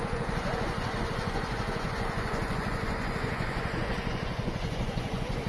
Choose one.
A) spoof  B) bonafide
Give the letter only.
A